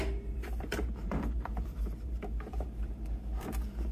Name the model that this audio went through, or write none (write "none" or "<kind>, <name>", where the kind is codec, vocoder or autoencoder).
vocoder, BigVGAN v2